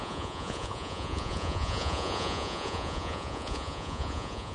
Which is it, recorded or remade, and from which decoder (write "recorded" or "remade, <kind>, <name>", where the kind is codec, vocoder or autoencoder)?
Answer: remade, vocoder, Vocos